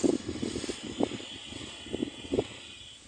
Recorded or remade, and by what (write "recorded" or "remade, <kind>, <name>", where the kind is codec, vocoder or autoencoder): recorded